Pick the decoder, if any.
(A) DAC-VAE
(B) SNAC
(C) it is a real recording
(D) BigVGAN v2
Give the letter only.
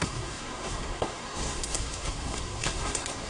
B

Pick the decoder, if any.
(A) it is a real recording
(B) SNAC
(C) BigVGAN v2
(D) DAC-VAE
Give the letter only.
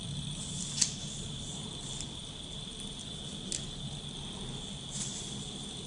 A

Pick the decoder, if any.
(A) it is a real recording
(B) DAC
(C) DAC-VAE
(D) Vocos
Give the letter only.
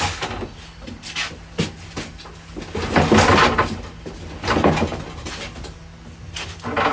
A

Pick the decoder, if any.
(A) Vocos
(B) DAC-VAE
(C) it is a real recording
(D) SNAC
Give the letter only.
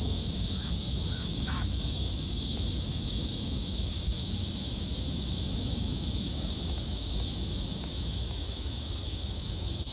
B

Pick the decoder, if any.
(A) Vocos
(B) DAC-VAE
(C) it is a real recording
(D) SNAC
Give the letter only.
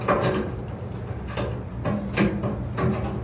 C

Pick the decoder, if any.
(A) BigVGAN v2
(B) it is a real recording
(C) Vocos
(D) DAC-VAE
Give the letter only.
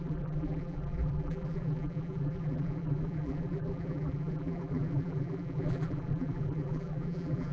A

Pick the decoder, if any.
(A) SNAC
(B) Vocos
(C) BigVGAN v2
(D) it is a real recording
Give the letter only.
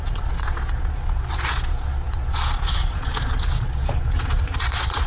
B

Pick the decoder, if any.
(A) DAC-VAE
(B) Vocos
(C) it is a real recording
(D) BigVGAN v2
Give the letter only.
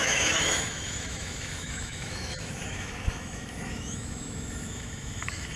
A